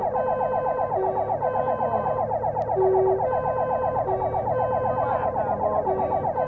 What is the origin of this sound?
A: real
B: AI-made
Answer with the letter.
A